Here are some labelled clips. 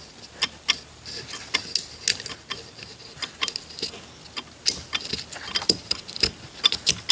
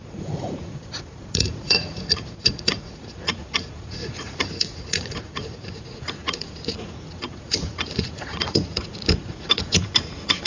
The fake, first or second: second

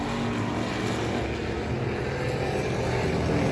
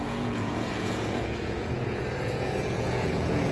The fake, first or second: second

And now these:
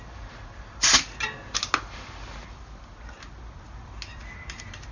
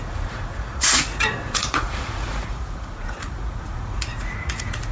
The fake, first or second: second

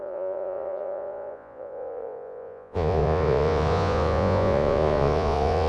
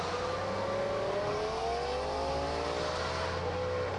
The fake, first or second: first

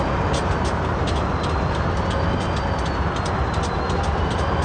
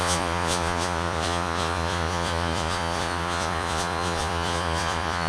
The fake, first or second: second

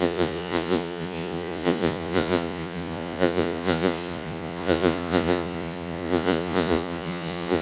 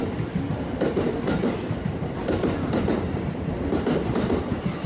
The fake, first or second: first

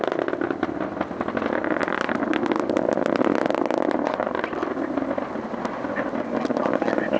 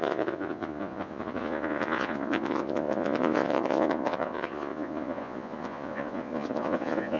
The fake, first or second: second